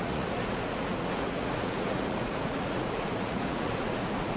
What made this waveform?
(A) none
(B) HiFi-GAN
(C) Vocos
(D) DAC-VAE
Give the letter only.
C